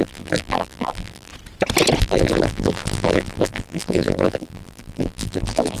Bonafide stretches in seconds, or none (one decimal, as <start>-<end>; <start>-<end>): 1.3-2.0